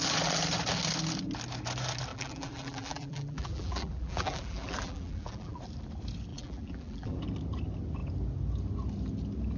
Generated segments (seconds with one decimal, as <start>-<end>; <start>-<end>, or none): 2.1-5.6; 6.3-7.2